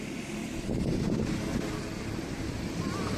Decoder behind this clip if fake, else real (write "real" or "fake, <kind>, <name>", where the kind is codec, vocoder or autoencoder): fake, vocoder, BigVGAN v2